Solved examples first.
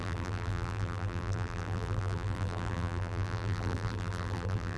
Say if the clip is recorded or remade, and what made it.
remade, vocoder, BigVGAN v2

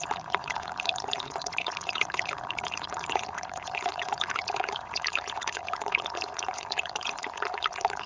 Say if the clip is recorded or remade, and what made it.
remade, vocoder, Vocos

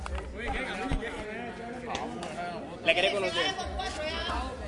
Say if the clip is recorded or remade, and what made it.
recorded